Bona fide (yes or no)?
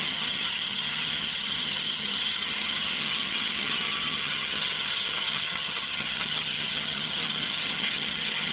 no